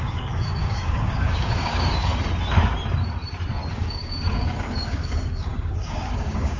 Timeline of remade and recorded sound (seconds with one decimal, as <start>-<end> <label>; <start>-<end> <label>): 0.0-2.1 remade; 2.1-3.7 recorded; 3.7-6.6 remade